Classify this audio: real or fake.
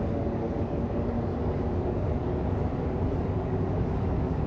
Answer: fake